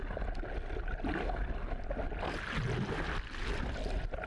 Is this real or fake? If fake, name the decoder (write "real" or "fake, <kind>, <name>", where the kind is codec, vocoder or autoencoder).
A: real